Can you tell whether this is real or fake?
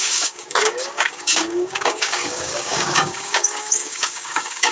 fake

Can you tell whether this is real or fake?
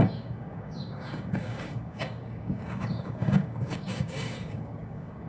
fake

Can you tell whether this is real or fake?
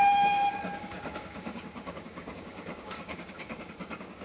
fake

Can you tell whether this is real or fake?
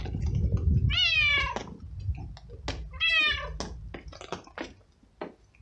real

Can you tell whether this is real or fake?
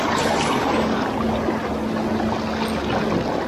real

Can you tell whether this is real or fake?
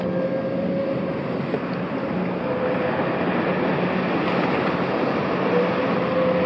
real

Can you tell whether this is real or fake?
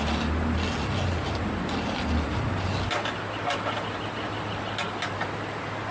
real